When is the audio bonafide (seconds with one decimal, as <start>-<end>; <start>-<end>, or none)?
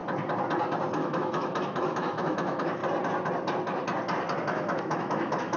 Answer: 0.0-1.0; 2.8-4.4